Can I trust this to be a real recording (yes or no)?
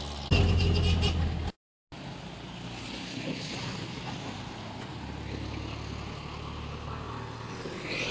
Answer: yes